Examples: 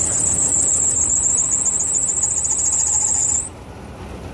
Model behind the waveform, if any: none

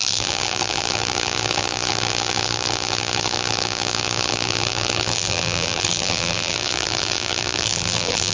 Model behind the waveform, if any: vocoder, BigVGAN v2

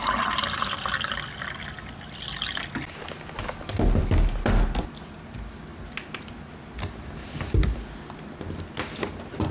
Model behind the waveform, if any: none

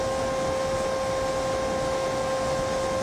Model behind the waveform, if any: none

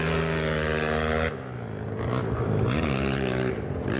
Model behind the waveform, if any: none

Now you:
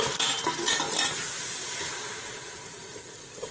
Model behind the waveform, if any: none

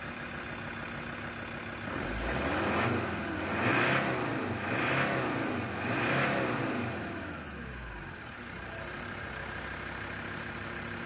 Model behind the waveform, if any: none